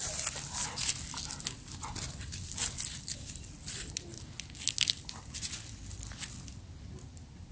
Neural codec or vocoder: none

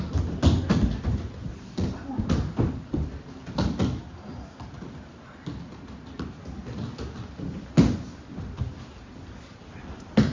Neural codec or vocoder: none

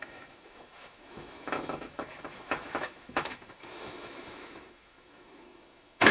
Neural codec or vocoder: autoencoder, DAC-VAE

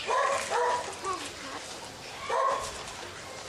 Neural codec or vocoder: none